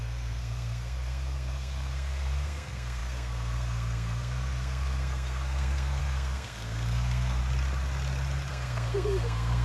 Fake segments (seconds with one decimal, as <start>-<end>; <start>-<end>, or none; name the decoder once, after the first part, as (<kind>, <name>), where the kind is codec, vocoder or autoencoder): 0.0-7.4 (codec, SNAC); 8.5-9.6